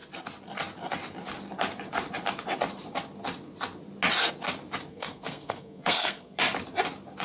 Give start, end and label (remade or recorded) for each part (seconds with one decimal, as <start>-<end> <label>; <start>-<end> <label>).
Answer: 0.0-4.9 recorded; 4.9-6.4 remade; 6.4-7.2 recorded